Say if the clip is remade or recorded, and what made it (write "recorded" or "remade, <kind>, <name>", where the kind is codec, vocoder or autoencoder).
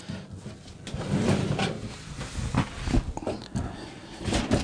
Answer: recorded